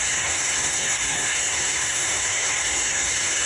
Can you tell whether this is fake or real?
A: fake